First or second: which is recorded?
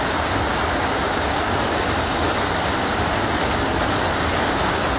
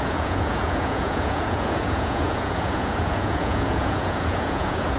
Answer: first